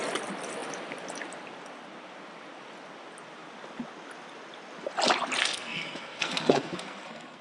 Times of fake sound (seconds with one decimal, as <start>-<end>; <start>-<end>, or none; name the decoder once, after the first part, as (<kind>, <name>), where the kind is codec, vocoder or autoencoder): 5.4-7.4 (codec, SNAC)